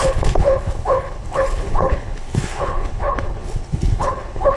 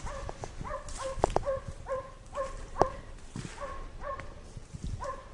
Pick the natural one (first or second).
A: second